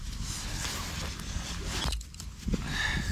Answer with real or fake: real